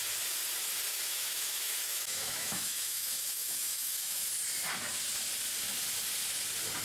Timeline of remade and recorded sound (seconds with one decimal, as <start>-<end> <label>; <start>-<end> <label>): 0.0-0.9 recorded; 0.9-4.3 remade; 4.3-6.8 recorded

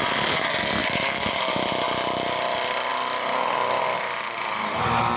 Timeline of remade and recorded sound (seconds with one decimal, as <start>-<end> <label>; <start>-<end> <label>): 0.0-0.8 recorded; 0.8-1.5 remade; 1.5-5.2 recorded

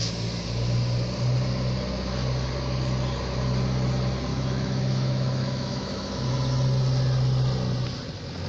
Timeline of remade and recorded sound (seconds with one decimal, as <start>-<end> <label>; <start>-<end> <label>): 0.0-4.3 recorded; 4.3-6.3 remade; 6.3-8.5 recorded

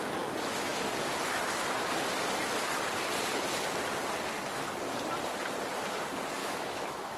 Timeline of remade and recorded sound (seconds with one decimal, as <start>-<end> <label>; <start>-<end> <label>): 0.0-6.4 recorded; 6.4-7.2 remade

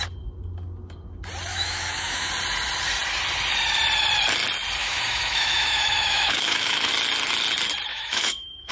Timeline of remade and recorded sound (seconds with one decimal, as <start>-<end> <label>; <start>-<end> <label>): 0.0-1.5 recorded; 1.5-2.3 remade; 2.3-4.8 recorded; 4.8-6.9 remade; 6.9-7.9 recorded; 7.9-8.7 remade

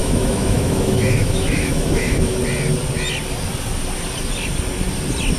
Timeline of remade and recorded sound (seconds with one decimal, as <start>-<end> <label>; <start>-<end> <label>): 0.0-2.4 remade; 2.4-5.4 recorded

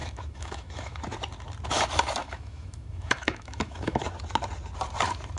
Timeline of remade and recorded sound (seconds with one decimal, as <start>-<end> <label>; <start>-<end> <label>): 0.0-1.0 remade; 1.0-2.2 recorded; 2.2-4.0 remade; 4.0-5.4 recorded

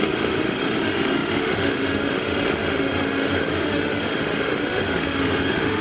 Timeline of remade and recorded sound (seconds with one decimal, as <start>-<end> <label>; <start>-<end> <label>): 0.0-5.8 remade